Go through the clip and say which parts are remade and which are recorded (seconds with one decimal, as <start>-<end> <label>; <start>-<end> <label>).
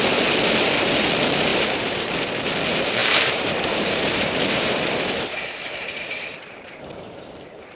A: 0.0-1.5 recorded; 1.5-2.1 remade; 2.1-3.0 recorded; 3.0-7.8 remade